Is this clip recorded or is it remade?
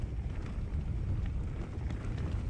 recorded